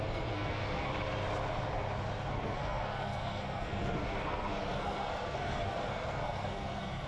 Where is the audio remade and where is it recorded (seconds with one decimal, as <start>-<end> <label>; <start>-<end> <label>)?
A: 0.0-0.9 remade; 0.9-2.3 recorded; 2.3-7.1 remade